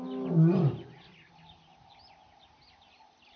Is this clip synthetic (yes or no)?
no